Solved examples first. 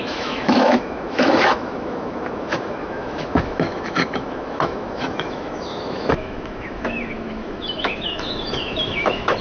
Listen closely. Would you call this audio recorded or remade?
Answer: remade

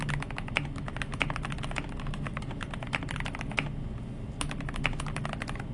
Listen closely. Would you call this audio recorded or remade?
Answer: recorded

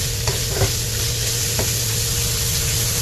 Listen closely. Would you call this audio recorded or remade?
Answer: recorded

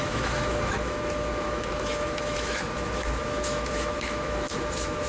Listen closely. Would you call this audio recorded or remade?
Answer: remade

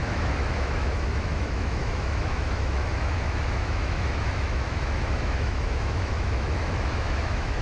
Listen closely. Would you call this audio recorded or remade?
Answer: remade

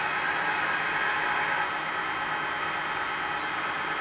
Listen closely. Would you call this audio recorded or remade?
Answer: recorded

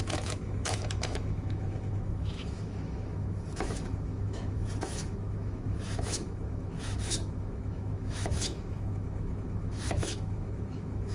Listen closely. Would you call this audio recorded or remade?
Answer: remade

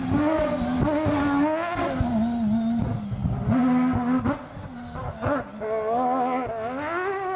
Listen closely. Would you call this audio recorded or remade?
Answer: recorded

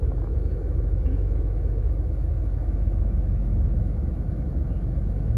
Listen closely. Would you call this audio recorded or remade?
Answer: remade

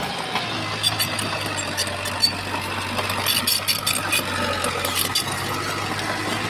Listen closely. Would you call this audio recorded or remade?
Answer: recorded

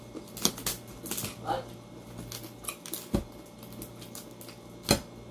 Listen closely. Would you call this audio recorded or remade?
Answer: recorded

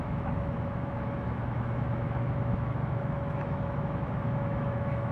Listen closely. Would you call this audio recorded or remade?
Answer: remade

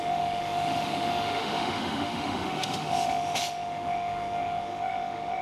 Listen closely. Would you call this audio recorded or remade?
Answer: remade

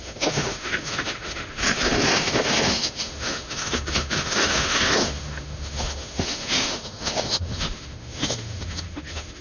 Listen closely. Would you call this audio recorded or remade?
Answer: remade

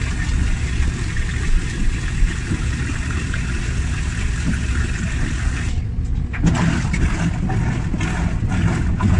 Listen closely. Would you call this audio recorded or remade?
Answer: recorded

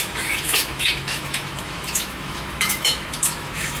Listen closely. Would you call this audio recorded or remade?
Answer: remade